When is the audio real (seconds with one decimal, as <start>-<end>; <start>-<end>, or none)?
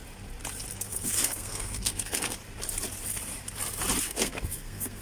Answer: 0.0-0.7; 2.4-4.0